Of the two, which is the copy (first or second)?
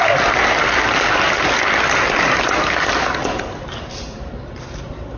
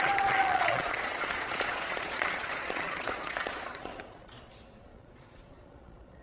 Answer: second